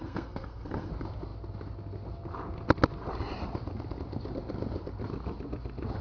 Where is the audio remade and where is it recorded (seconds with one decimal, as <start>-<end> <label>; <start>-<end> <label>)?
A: 0.0-0.9 remade; 0.9-6.0 recorded